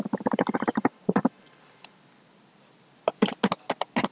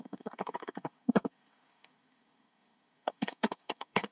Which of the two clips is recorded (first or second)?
first